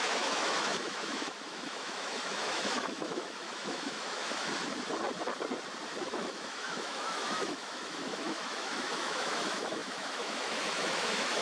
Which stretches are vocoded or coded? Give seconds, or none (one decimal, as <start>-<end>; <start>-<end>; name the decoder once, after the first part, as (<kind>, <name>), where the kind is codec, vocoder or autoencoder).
0.0-4.5 (autoencoder, DAC-VAE); 6.0-11.4